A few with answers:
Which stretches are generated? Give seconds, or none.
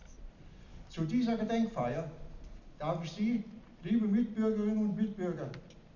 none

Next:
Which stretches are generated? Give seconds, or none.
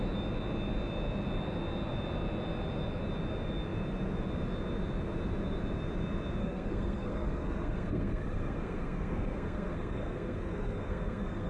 6.4-11.5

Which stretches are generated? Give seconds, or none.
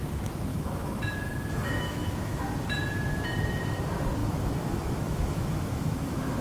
0.5-2.4; 4.2-6.4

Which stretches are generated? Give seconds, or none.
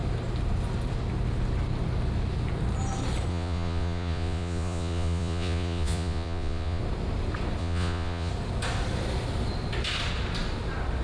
3.3-6.8; 7.6-8.3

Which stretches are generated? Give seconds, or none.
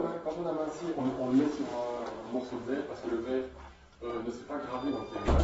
none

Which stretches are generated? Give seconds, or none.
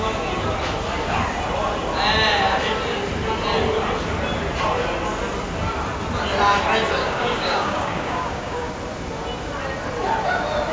7.0-8.7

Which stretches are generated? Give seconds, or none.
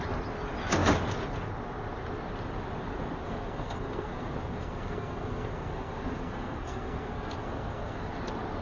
3.2-8.1